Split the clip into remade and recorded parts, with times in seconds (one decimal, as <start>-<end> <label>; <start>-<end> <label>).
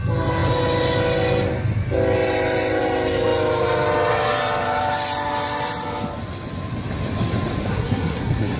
0.0-7.7 recorded; 7.7-8.6 remade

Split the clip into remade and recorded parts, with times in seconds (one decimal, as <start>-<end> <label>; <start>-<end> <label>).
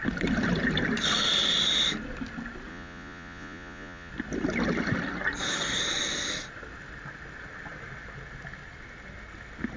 0.0-2.7 recorded; 2.7-4.1 remade; 4.1-9.8 recorded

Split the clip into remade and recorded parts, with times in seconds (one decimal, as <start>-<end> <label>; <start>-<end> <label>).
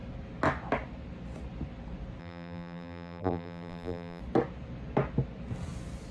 0.0-2.2 recorded; 2.2-4.2 remade; 4.2-6.1 recorded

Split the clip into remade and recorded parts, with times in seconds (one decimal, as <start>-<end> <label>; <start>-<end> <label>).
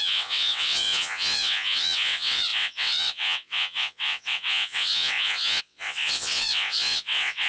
0.0-7.5 remade